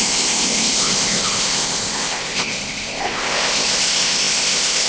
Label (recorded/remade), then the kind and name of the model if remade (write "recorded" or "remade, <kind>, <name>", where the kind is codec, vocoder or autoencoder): remade, codec, ZipCodec